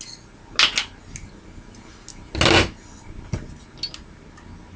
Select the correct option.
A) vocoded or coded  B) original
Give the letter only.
B